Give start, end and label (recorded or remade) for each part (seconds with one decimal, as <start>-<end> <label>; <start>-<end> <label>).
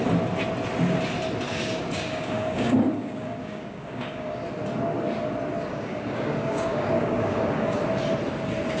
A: 0.0-1.5 recorded; 1.5-4.3 remade; 4.3-5.7 recorded; 5.7-7.8 remade; 7.8-8.8 recorded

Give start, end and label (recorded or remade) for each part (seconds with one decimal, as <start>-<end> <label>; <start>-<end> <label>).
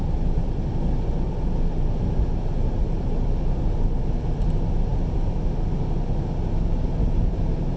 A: 0.0-7.8 recorded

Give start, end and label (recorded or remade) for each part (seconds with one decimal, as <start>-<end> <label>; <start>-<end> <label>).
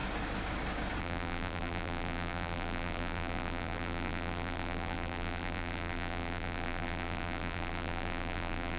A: 0.0-1.0 recorded; 1.0-8.8 remade